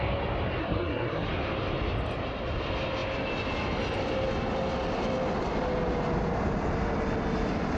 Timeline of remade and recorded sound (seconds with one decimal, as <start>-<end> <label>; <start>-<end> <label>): 0.0-0.6 recorded; 0.6-1.3 remade; 1.3-7.8 recorded